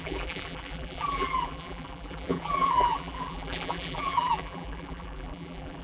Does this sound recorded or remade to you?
remade